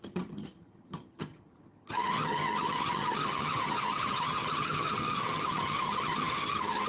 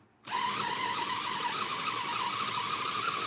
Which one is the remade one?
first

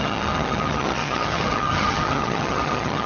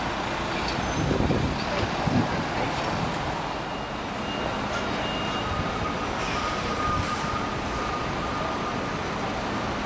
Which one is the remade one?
first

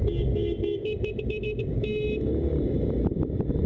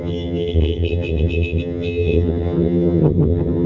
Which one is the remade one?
second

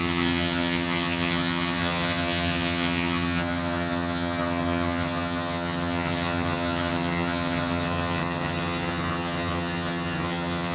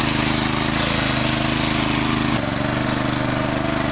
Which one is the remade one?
first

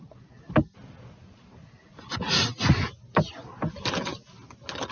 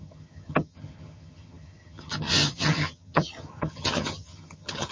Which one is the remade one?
second